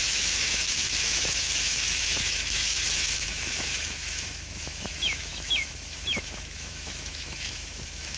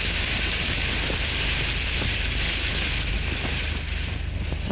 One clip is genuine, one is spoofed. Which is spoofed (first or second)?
first